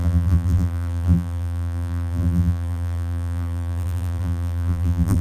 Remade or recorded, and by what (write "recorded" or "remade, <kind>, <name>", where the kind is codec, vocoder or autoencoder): remade, vocoder, BigVGAN v2